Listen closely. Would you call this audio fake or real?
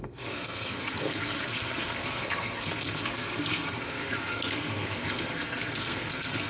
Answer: fake